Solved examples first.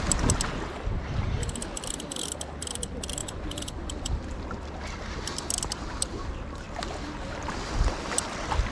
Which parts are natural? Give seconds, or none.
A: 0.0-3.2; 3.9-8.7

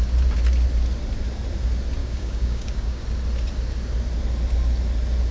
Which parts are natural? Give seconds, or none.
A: 0.0-2.0; 3.0-5.3